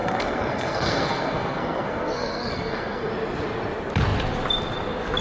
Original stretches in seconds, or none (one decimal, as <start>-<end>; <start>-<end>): 3.1-5.2